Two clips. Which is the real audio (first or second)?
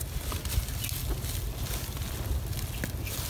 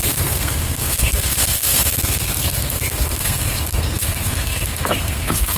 first